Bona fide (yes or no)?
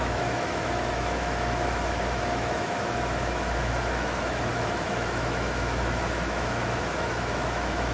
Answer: no